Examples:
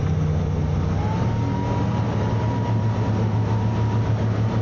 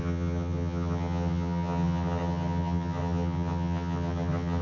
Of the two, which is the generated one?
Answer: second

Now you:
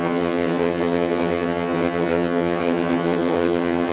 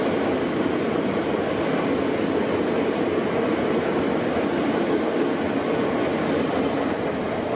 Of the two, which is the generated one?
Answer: first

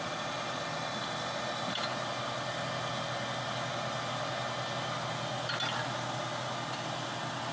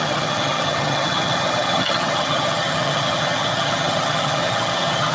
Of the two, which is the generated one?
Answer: second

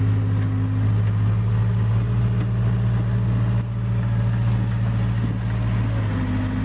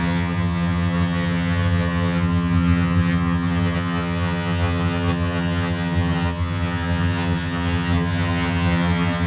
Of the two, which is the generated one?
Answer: second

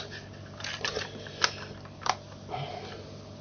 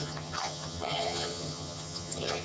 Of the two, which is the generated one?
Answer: second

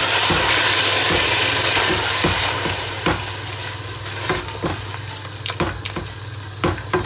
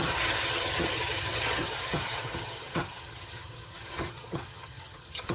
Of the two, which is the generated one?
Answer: second